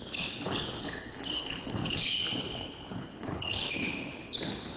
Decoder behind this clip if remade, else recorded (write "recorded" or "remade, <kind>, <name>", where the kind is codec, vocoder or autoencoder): remade, codec, HILCodec